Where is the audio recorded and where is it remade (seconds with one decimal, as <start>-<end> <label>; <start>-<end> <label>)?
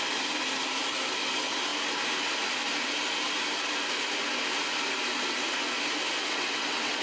0.0-6.2 recorded; 6.2-7.0 remade